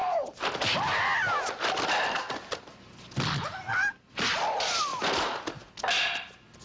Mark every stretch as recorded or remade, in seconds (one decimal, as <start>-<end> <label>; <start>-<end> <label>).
0.0-6.6 recorded